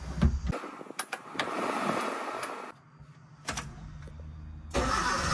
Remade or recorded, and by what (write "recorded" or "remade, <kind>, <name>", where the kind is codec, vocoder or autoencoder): recorded